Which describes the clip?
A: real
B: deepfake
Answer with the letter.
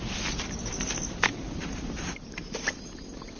B